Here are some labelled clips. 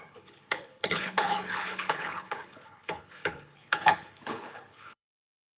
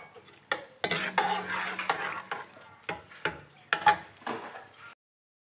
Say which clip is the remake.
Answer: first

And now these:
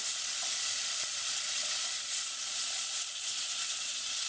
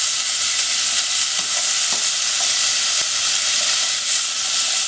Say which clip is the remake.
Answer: first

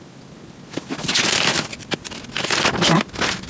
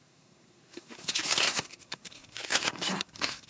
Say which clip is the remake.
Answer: second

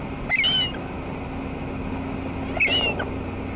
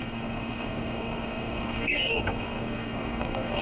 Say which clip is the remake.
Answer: second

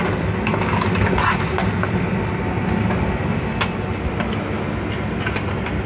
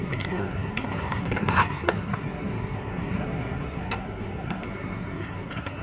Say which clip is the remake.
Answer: second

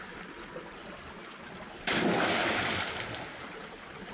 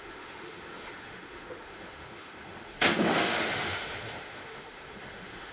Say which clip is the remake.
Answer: second